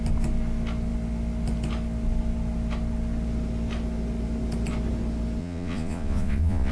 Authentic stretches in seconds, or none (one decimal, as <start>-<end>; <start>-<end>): 0.0-5.4